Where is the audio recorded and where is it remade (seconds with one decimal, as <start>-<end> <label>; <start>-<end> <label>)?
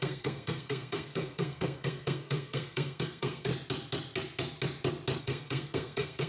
0.0-3.5 remade; 3.5-5.2 recorded; 5.2-6.3 remade